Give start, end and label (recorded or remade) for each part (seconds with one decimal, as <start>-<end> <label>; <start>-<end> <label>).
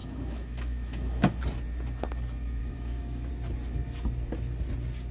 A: 0.0-1.4 remade; 1.4-2.6 recorded; 2.6-3.3 remade; 3.3-5.1 recorded